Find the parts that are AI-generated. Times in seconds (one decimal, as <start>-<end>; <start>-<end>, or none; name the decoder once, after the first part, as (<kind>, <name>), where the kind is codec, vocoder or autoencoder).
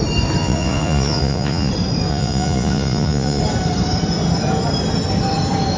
0.4-1.7 (vocoder, Vocos); 2.1-3.4